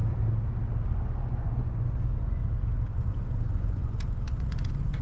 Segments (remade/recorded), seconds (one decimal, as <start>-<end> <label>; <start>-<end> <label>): 0.0-0.9 recorded; 0.9-2.4 remade; 2.4-2.9 recorded; 2.9-5.0 remade